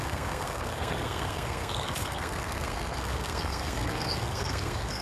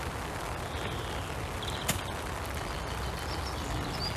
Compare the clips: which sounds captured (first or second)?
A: second